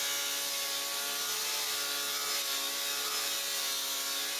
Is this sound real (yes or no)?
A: yes